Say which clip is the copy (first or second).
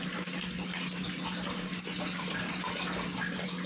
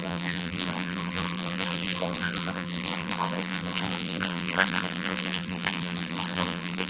second